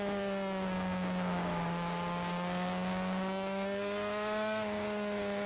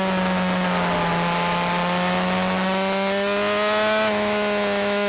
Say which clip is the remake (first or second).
first